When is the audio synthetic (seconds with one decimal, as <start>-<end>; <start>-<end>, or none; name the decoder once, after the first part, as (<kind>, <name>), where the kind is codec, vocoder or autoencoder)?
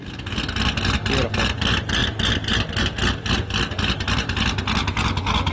none